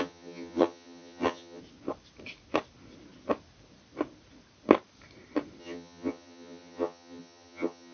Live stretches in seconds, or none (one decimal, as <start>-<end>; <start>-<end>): 1.6-5.6